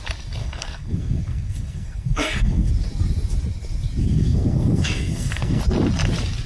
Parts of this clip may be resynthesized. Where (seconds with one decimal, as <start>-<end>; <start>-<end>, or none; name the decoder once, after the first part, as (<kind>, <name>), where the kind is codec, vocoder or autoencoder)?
0.4-2.7 (codec, SNAC); 4.0-5.6